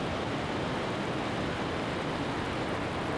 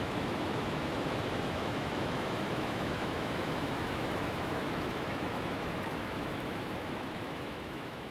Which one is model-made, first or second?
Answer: second